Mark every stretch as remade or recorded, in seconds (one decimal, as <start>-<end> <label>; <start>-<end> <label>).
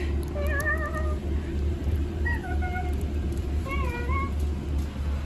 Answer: 0.0-1.2 recorded; 1.2-4.3 remade; 4.3-5.2 recorded